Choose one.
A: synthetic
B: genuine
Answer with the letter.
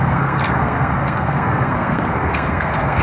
A